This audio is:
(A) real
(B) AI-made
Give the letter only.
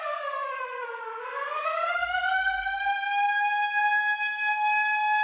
B